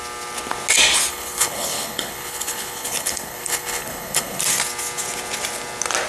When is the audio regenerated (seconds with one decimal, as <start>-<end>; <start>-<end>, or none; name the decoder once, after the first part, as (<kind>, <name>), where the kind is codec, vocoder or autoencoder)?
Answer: 1.1-4.4 (codec, HILCodec)